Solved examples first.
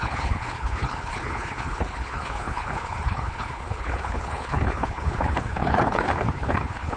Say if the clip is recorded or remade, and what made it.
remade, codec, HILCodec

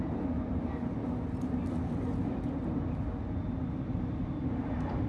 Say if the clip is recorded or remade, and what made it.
recorded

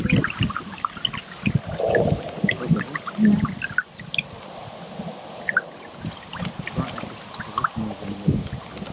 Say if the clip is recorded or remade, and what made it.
recorded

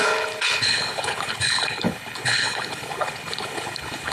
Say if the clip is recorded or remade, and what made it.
remade, codec, HILCodec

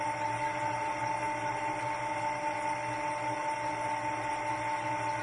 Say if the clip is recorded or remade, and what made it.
recorded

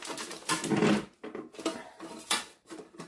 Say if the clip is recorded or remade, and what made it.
recorded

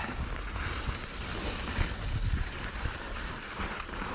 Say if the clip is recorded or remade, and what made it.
recorded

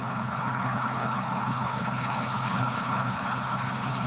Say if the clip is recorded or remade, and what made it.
remade, codec, HILCodec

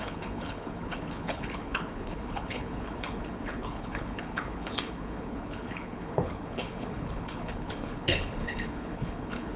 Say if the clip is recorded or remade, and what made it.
remade, codec, HILCodec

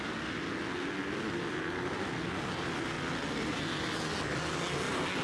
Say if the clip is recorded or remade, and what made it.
recorded